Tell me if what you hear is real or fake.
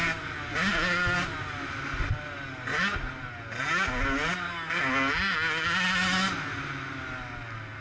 real